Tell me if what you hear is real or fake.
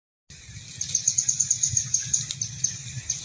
real